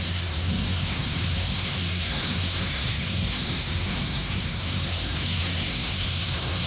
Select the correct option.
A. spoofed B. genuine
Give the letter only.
A